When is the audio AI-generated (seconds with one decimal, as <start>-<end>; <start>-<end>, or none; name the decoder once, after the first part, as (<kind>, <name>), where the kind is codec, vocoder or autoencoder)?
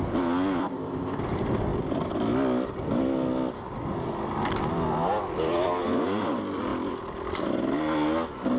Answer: 0.6-1.2 (codec, ZipCodec)